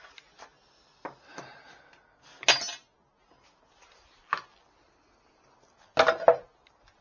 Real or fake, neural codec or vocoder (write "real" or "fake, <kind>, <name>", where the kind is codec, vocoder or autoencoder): real